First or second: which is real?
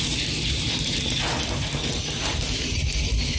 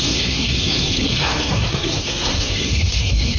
first